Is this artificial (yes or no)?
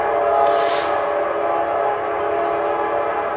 no